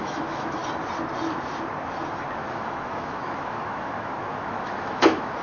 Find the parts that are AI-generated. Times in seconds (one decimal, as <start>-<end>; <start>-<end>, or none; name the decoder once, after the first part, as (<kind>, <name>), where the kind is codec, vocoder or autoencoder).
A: 0.0-0.6 (autoencoder, DAC-VAE); 2.5-5.4